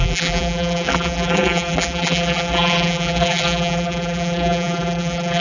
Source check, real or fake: fake